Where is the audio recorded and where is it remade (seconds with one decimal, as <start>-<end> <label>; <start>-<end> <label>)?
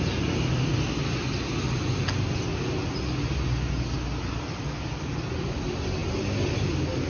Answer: 0.0-7.1 recorded